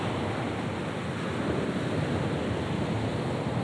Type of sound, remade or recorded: recorded